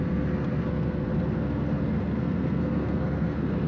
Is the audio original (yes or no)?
no